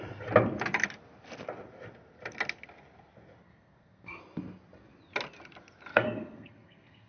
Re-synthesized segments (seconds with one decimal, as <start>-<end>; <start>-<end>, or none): 3.4-4.2; 5.9-7.1